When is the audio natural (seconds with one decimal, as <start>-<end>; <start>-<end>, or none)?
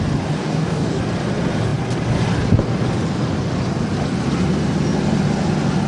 0.0-0.4; 1.0-5.9